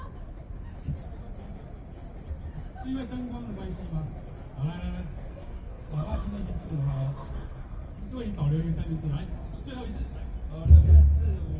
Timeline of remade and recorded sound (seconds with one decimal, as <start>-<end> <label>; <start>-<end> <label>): 0.0-5.1 recorded; 5.1-8.0 remade; 8.0-11.6 recorded